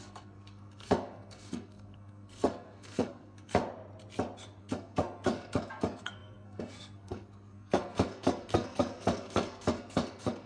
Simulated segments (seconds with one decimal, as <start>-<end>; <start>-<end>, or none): 0.0-3.6; 4.6-10.5